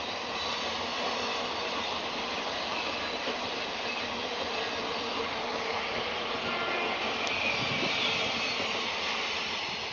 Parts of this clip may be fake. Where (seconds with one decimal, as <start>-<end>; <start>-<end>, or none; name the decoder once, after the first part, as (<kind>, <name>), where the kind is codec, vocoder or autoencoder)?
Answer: 5.7-6.4 (vocoder, Vocos)